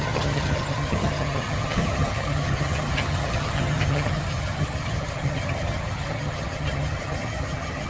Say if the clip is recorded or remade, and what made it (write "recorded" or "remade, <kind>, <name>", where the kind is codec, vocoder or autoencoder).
remade, vocoder, HiFi-GAN